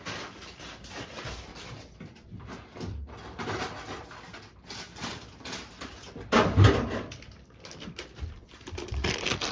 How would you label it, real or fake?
real